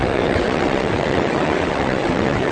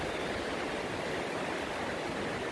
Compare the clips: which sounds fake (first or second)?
first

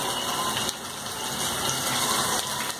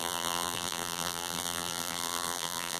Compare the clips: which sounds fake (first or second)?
second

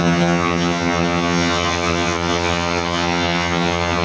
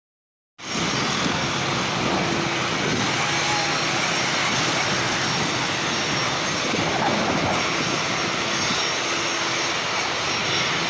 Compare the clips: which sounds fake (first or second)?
first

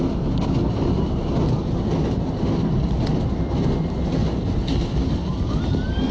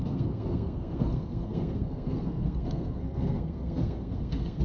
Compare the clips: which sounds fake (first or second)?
second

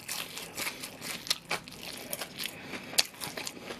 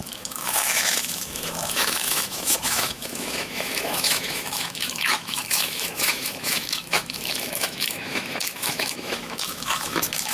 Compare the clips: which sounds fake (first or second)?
second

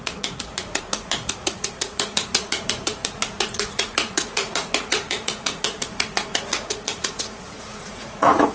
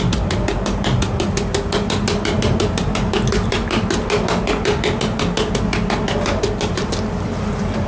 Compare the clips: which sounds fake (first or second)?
first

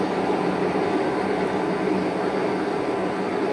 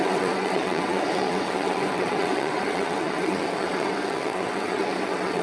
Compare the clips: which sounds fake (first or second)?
second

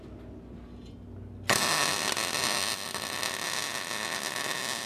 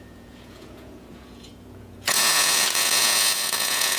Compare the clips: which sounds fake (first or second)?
second